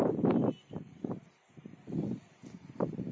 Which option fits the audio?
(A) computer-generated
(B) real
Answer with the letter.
B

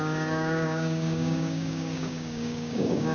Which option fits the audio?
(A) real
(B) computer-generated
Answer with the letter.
B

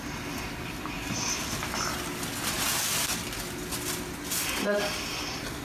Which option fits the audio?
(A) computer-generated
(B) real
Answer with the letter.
B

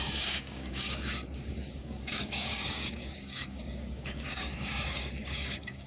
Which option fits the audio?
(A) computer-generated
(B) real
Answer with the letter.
A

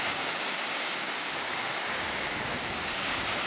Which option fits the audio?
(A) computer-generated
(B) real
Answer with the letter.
A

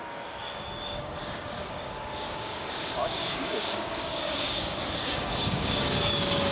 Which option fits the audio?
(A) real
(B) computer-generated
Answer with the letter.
B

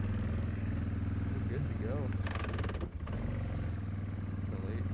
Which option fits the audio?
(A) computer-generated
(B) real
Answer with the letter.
B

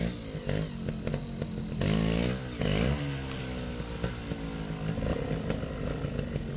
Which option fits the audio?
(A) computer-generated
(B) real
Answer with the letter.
B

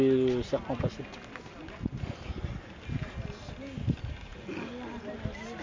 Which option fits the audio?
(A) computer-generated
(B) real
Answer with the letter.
B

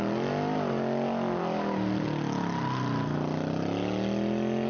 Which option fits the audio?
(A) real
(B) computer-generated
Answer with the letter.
A